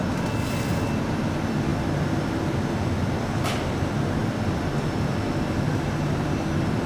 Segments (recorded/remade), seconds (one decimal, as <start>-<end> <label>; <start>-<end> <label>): 0.0-6.9 recorded